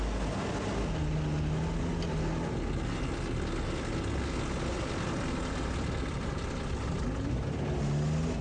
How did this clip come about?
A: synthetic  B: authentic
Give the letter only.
B